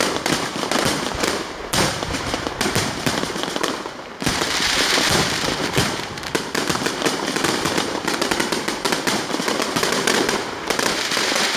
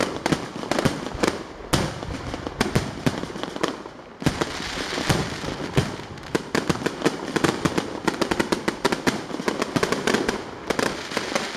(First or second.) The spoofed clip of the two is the first